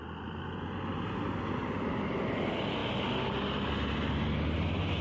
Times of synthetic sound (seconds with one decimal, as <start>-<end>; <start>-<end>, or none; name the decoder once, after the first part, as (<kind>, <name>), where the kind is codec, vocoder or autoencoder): none